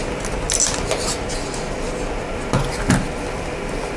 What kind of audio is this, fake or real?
real